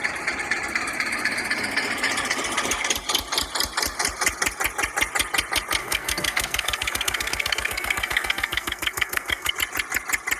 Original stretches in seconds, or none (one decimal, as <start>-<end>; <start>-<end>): 0.0-5.8; 9.5-10.4